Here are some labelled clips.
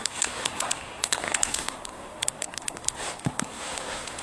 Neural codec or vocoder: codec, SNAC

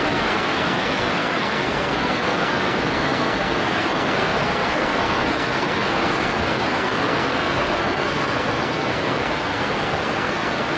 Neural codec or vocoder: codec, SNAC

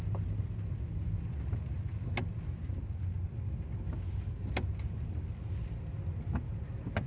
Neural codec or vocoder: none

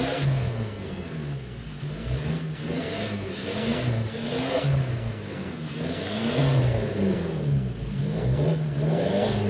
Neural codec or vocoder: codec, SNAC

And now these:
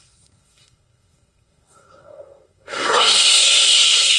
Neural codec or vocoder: codec, SNAC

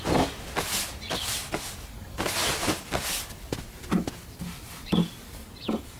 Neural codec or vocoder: none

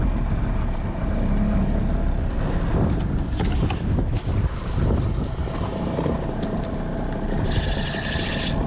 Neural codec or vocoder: none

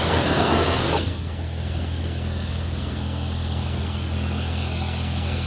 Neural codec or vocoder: codec, SNAC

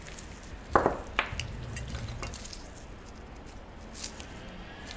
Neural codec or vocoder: none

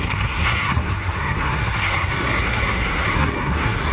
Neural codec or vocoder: codec, SNAC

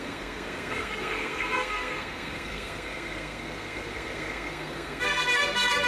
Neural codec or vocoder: codec, SNAC